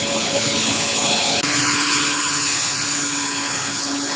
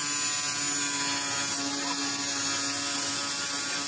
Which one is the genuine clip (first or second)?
second